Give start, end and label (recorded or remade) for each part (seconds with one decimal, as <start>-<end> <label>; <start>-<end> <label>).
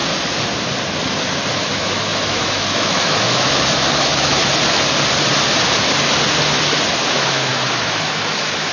0.0-1.5 recorded; 1.5-4.4 remade; 4.4-7.1 recorded; 7.1-8.7 remade